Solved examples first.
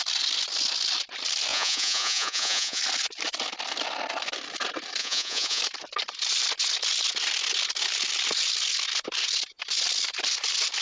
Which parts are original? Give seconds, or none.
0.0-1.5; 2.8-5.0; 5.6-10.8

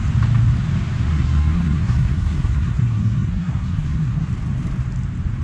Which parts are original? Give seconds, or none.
0.0-1.1; 4.3-5.4

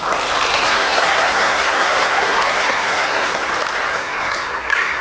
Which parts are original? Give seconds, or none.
0.0-0.5; 3.5-3.9